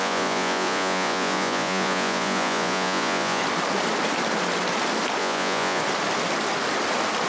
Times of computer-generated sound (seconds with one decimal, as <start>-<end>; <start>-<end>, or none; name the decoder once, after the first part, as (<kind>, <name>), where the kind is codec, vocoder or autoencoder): 0.0-3.4 (vocoder, Vocos); 5.2-5.8